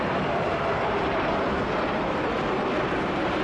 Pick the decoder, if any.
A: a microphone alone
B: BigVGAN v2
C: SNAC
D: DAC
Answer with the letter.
B